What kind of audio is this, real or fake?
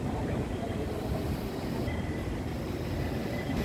fake